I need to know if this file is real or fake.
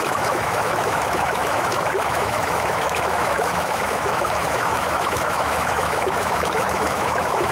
fake